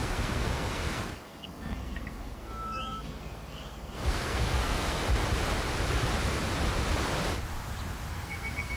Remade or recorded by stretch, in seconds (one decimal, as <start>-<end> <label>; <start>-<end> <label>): 0.0-5.0 remade; 5.0-8.1 recorded; 8.1-8.8 remade